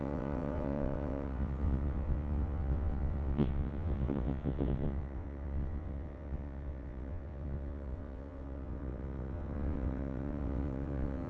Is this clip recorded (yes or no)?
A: no